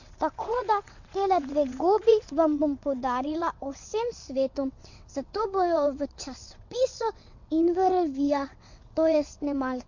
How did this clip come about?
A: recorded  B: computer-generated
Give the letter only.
B